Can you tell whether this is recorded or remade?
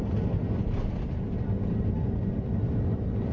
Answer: recorded